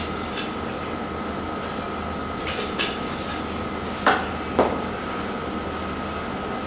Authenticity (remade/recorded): recorded